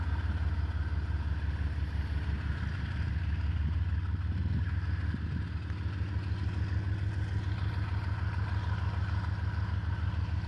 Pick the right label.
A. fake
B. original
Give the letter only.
B